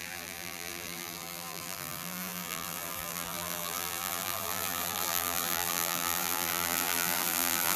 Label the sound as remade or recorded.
remade